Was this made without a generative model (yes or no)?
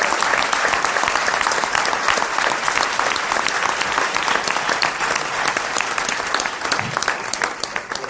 yes